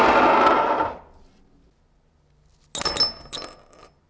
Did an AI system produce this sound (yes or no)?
no